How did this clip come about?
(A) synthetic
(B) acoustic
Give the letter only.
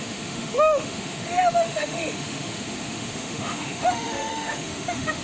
A